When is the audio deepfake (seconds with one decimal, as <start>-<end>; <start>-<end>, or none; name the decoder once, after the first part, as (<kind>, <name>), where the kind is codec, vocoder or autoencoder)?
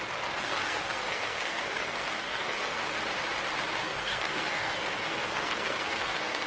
0.4-2.8 (codec, SNAC); 3.8-6.5